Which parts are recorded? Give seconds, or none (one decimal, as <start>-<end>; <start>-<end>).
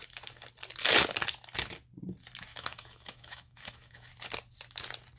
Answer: 0.0-2.5; 4.1-5.2